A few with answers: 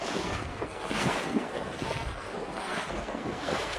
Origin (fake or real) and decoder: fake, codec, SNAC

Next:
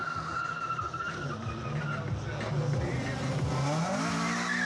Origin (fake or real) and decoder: real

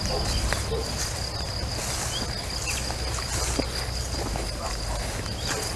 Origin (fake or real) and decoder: real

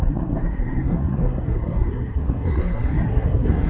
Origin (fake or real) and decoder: fake, codec, SNAC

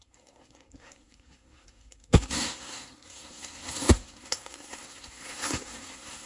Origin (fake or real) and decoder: fake, codec, SNAC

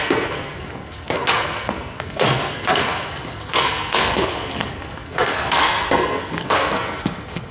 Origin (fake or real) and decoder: fake, codec, SNAC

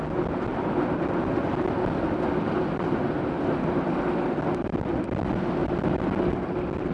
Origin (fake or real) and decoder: real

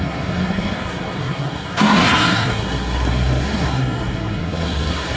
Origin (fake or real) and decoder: fake, codec, SNAC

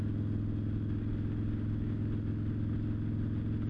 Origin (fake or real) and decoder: real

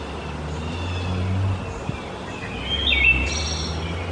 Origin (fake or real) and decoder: real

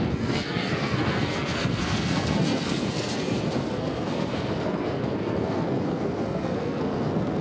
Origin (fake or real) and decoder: fake, codec, SNAC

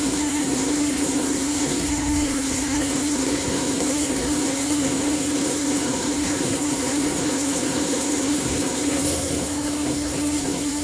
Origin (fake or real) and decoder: fake, codec, SNAC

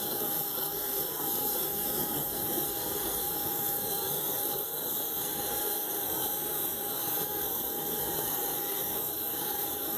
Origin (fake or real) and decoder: fake, codec, SNAC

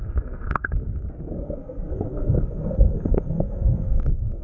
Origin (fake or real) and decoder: fake, codec, SNAC